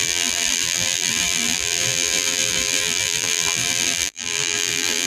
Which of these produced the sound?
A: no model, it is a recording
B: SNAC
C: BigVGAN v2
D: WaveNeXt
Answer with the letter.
C